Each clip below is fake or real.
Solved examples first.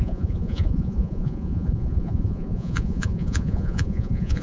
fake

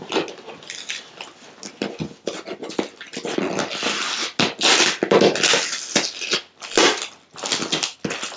real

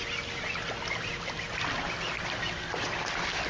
real